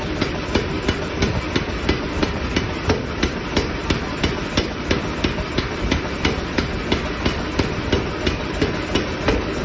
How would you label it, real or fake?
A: fake